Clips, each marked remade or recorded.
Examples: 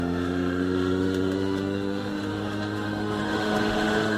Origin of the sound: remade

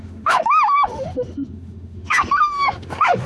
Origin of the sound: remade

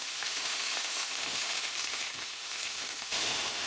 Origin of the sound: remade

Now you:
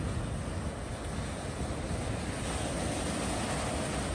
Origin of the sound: recorded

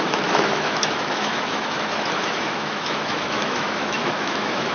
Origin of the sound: remade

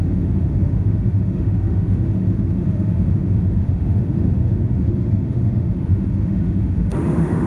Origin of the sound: remade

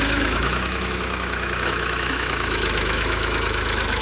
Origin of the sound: remade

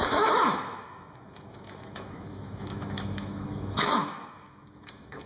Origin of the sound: remade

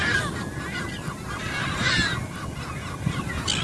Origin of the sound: recorded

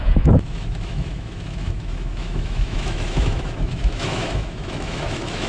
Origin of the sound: remade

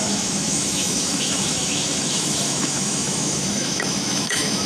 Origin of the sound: remade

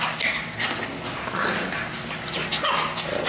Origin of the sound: recorded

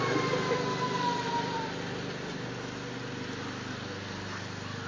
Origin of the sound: recorded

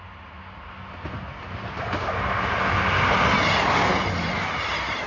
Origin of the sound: recorded